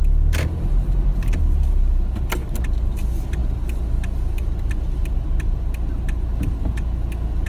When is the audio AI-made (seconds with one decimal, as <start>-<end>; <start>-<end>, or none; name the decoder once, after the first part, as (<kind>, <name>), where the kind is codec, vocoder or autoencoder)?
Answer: none